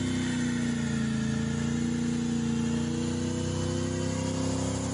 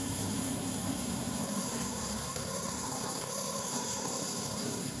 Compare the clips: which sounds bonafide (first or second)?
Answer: first